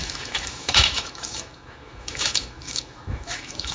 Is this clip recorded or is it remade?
remade